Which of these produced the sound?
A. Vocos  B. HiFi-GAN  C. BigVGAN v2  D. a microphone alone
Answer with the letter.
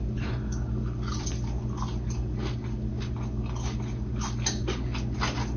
D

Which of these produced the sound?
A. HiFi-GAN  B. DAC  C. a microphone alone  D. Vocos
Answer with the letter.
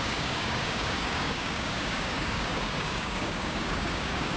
B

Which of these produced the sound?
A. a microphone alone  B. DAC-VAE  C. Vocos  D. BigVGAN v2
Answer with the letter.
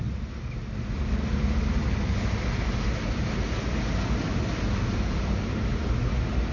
A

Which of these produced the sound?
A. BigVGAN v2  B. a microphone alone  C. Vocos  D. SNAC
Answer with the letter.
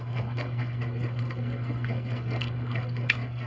D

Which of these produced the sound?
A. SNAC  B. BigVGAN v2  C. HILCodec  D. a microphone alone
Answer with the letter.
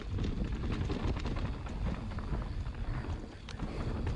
D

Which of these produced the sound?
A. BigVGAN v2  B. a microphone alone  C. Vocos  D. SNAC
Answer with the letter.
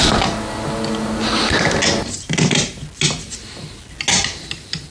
B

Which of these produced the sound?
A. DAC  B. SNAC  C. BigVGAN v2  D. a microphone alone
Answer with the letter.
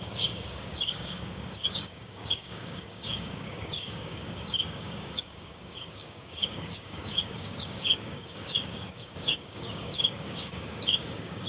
A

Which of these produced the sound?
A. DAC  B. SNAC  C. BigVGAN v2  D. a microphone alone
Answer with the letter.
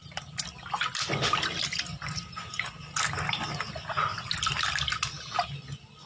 D